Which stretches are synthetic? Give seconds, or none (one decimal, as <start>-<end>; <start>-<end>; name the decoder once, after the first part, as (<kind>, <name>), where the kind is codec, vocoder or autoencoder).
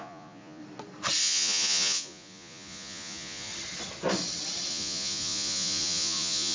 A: 0.0-0.6 (vocoder, Vocos); 1.2-3.5; 4.7-6.5